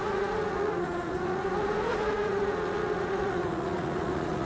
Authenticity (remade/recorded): remade